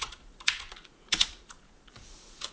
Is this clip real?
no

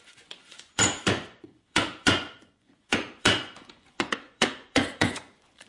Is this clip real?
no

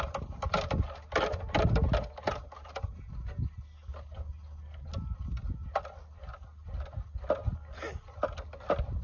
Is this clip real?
yes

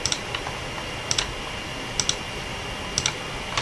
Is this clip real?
yes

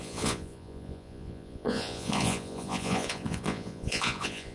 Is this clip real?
no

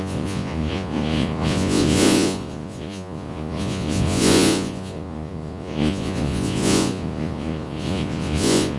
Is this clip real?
no